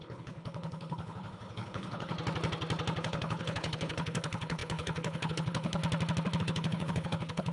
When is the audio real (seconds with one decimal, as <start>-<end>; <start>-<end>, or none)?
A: 2.1-3.0; 5.8-6.4

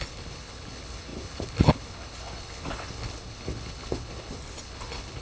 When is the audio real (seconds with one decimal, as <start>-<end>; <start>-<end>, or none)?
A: none

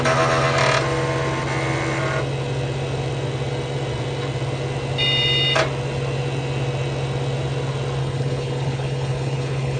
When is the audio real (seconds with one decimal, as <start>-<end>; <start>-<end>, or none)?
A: 0.0-8.0

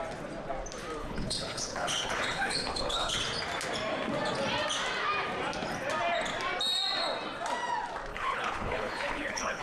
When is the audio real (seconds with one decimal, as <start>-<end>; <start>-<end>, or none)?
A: 0.0-1.0; 3.2-8.1

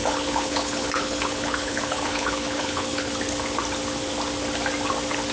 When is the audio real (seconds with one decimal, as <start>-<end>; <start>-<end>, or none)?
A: 3.1-5.3